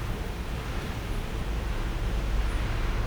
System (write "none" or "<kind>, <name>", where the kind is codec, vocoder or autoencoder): none